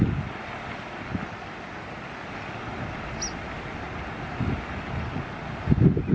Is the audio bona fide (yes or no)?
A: yes